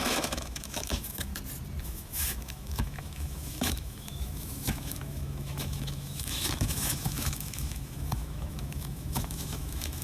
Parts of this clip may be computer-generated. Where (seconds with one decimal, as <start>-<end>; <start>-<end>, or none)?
0.0-1.3; 1.8-10.0